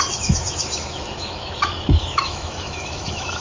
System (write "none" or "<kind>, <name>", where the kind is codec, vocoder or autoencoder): autoencoder, DAC-VAE